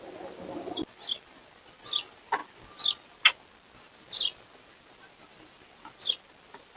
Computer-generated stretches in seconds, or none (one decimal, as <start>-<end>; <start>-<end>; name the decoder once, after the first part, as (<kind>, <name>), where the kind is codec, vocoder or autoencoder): none